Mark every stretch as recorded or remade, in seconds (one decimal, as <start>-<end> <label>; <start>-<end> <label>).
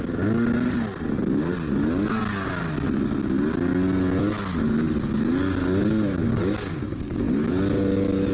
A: 0.0-6.1 recorded; 6.1-7.5 remade; 7.5-8.3 recorded